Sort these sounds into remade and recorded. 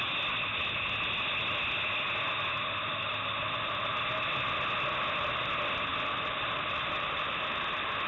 recorded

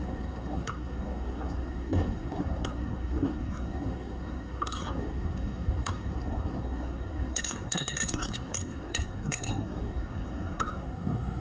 remade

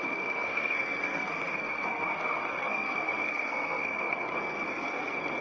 remade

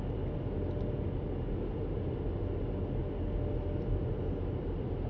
recorded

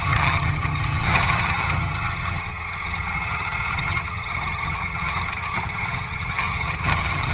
remade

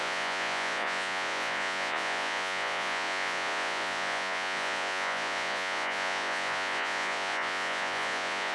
remade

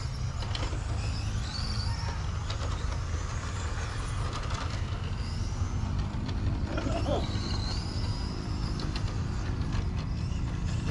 recorded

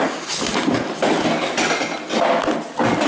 recorded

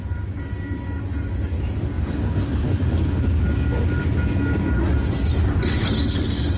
recorded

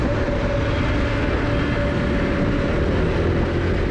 recorded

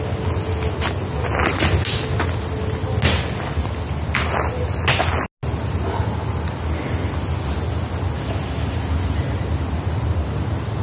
recorded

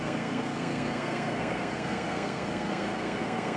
remade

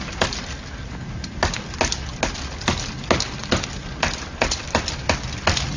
recorded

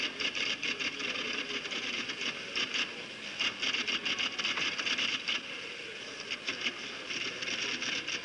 recorded